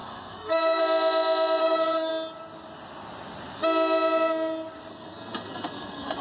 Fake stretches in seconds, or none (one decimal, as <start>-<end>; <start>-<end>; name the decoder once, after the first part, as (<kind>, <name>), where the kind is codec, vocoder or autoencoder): 0.0-0.8 (codec, SNAC); 1.6-2.1; 4.9-6.2